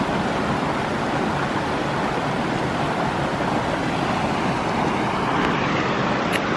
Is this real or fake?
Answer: real